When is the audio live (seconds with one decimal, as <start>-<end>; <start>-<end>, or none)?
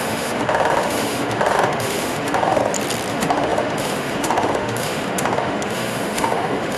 2.6-3.1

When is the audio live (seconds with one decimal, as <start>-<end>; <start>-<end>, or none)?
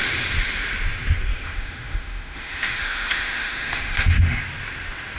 0.0-1.3; 4.4-5.2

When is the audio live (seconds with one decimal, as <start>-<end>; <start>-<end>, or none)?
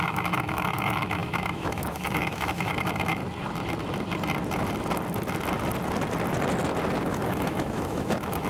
3.2-7.1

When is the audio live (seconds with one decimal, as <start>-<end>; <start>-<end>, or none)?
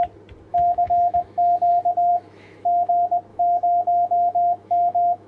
0.0-0.5; 1.7-2.1; 2.9-3.3